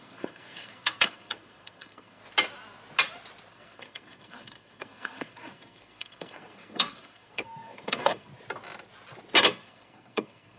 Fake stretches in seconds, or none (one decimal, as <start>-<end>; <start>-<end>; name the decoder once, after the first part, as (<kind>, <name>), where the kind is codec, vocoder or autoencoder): 0.0-2.2 (codec, SNAC); 3.5-8.3; 9.4-10.6